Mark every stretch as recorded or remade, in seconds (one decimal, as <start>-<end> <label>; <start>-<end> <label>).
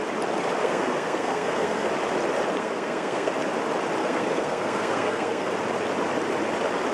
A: 0.0-0.6 recorded; 0.6-1.9 remade; 1.9-2.6 recorded; 2.6-3.3 remade; 3.3-4.0 recorded; 4.0-5.5 remade; 5.5-6.9 recorded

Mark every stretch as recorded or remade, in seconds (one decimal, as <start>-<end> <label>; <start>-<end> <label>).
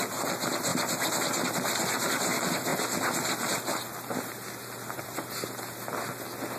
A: 0.0-6.6 recorded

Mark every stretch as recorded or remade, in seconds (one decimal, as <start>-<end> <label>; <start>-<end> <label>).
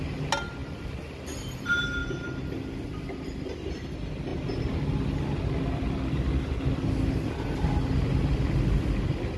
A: 0.0-9.4 recorded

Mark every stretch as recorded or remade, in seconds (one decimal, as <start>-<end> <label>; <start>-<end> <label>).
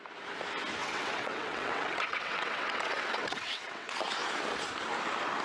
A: 0.0-0.8 recorded; 0.8-3.9 remade; 3.9-5.4 recorded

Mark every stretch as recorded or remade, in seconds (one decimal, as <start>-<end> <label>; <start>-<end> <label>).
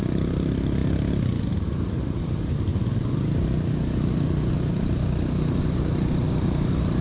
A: 0.0-0.8 remade; 0.8-1.5 recorded; 1.5-2.7 remade; 2.7-7.0 recorded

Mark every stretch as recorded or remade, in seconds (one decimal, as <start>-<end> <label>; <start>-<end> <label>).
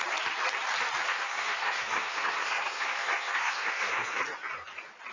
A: 0.0-1.1 recorded; 1.1-4.2 remade; 4.2-5.1 recorded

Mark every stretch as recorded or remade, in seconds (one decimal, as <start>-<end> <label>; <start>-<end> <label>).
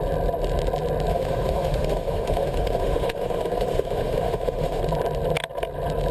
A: 0.0-1.1 recorded; 1.1-4.8 remade; 4.8-6.1 recorded